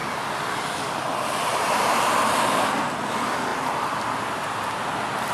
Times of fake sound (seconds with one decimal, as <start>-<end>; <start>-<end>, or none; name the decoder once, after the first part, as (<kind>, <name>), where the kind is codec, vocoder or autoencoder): 0.0-2.1 (vocoder, BigVGAN v2)